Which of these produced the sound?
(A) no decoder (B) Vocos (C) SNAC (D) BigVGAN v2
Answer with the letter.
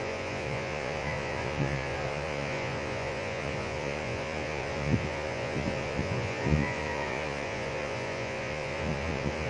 B